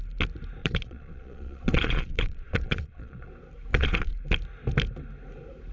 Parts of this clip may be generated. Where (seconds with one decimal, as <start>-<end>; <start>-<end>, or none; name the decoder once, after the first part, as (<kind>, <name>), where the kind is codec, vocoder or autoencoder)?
0.6-3.3 (vocoder, Vocos); 3.7-4.2